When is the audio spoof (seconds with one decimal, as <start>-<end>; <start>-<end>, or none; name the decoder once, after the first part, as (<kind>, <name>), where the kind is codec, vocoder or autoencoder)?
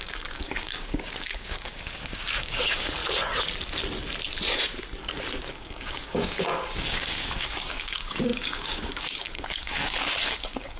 0.0-3.0 (codec, DAC); 5.4-10.8